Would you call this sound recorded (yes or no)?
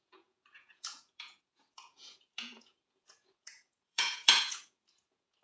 no